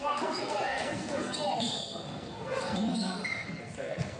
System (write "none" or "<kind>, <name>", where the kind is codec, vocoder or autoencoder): codec, SNAC